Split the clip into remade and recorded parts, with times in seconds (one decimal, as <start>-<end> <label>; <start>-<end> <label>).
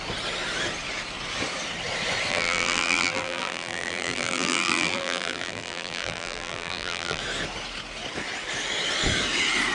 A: 0.0-2.3 recorded; 2.3-7.2 remade; 7.2-9.7 recorded